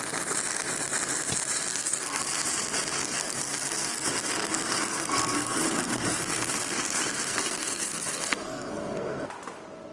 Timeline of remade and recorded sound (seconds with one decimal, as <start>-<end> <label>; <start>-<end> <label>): 0.0-1.7 recorded; 1.7-2.2 remade; 2.2-3.0 recorded; 3.0-4.1 remade; 4.1-4.5 recorded; 4.5-9.3 remade; 9.3-9.9 recorded